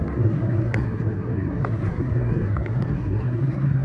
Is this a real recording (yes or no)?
no